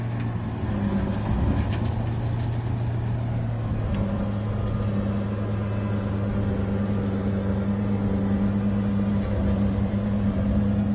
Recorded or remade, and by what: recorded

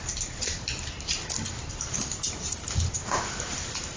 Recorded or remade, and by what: remade, vocoder, BigVGAN v2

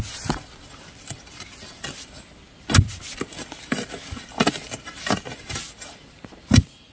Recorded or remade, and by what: recorded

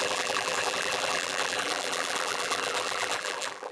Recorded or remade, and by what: remade, vocoder, BigVGAN v2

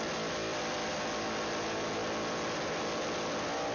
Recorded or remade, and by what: recorded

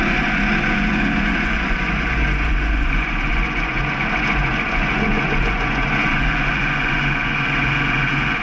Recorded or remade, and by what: remade, vocoder, Vocos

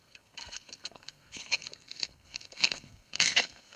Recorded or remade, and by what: remade, codec, SNAC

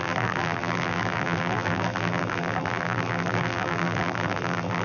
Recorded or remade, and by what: remade, vocoder, BigVGAN v2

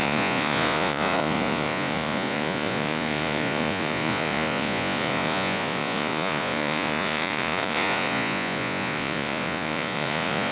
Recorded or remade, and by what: remade, vocoder, Vocos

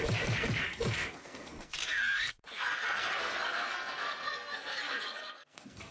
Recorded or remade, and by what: remade, codec, SNAC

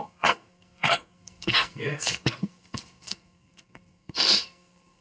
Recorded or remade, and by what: remade, codec, SNAC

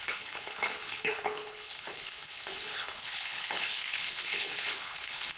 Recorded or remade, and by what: remade, codec, HILCodec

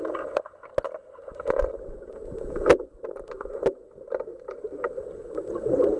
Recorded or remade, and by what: recorded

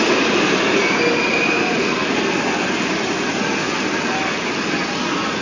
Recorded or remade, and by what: recorded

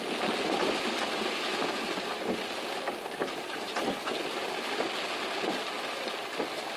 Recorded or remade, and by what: recorded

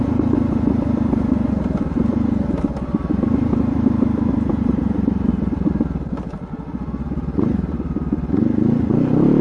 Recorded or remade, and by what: recorded